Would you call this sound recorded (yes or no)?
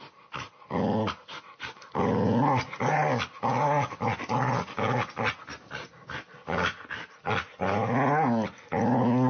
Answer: yes